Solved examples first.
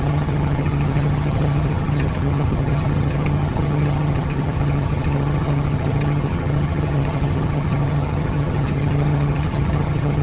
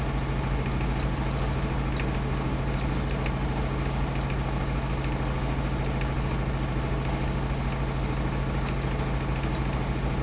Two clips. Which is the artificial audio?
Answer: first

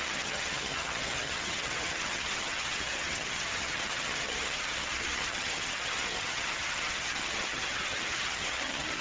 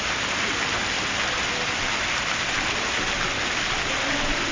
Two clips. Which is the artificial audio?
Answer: first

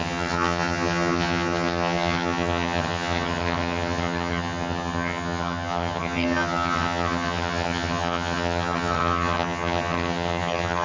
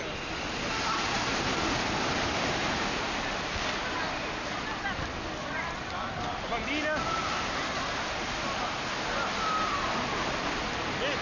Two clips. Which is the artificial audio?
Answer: first